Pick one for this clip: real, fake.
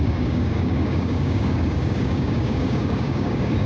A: fake